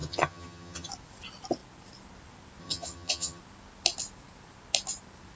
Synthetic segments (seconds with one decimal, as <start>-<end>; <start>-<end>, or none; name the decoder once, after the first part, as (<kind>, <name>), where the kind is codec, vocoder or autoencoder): 0.0-0.9 (vocoder, HiFi-GAN); 2.6-3.4